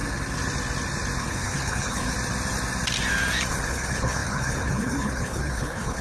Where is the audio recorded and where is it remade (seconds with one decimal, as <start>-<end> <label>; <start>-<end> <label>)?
0.0-1.2 recorded; 1.2-2.1 remade; 2.1-3.5 recorded; 3.5-6.0 remade